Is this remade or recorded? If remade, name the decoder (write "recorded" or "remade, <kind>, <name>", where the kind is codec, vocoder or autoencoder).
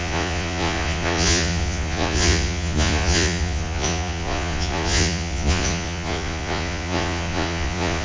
remade, vocoder, Vocos